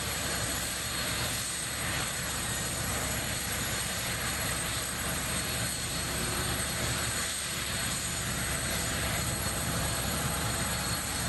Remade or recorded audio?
remade